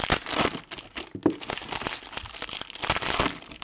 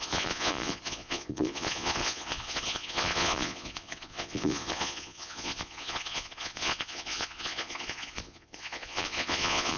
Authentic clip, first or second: first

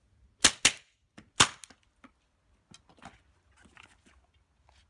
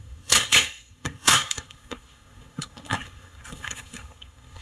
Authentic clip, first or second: first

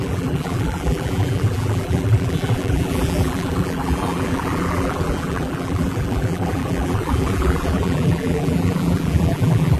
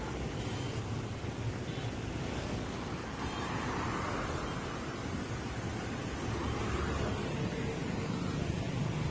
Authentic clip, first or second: second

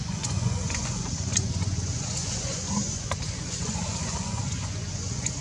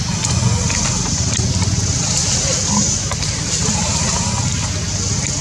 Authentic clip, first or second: second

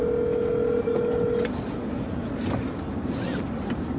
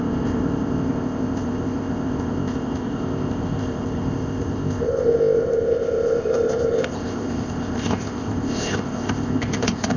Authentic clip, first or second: first